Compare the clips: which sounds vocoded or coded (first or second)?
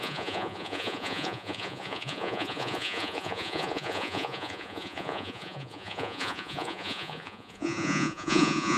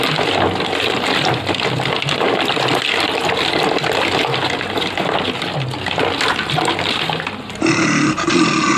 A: first